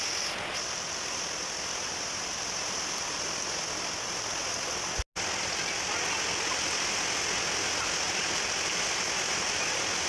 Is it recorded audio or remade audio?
recorded